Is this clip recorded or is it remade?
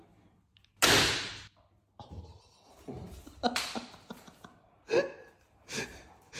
recorded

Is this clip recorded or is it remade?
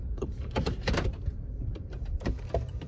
remade